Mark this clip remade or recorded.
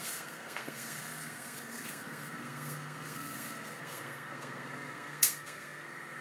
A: remade